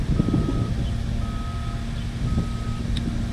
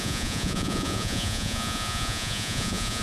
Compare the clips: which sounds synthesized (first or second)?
second